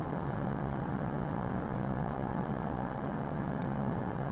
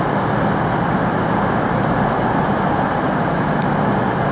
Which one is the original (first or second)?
second